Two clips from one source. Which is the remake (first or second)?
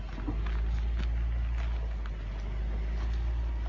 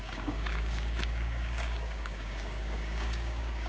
second